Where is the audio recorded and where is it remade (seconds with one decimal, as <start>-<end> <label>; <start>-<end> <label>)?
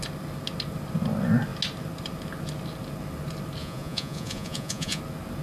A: 0.0-3.6 recorded; 3.6-5.0 remade; 5.0-5.4 recorded